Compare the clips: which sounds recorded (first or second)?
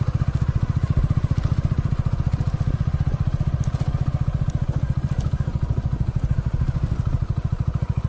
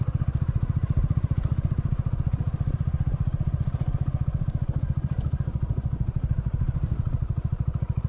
first